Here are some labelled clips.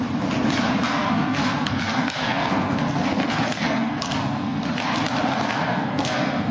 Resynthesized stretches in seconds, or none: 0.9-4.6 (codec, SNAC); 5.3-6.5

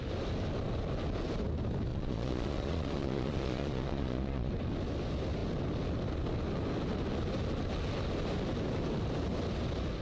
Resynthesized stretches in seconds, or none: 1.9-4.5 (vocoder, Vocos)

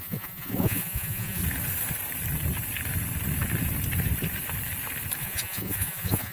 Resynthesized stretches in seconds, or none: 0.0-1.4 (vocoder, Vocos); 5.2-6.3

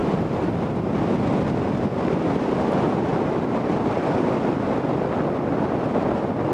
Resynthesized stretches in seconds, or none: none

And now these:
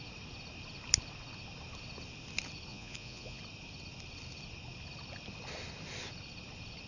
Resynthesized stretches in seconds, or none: 2.7-3.4 (vocoder, Vocos)